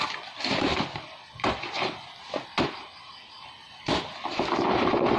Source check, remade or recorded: recorded